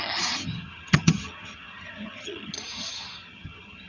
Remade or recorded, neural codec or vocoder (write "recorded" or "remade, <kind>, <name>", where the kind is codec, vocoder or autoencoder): remade, vocoder, HiFi-GAN